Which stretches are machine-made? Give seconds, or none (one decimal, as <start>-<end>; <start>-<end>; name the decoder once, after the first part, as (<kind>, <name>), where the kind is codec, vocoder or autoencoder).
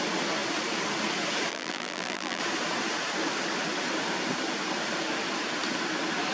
1.5-2.4 (vocoder, BigVGAN v2)